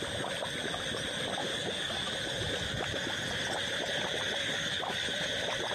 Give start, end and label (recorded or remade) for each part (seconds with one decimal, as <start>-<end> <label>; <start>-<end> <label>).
0.0-1.4 recorded; 1.4-2.1 remade; 2.1-4.4 recorded; 4.4-5.2 remade; 5.2-5.7 recorded